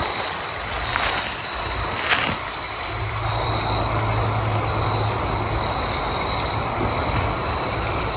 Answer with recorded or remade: recorded